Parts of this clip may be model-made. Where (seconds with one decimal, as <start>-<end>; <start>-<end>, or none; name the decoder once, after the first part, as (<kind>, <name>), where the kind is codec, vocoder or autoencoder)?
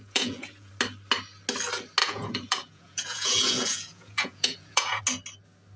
0.0-0.7 (vocoder, Vocos); 2.0-5.0